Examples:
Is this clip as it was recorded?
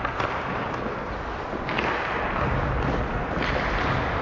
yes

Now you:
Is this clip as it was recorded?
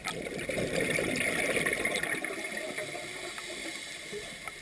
yes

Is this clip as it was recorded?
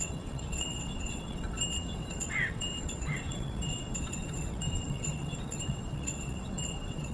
no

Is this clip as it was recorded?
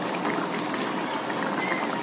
yes